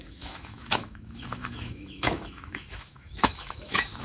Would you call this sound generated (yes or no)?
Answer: yes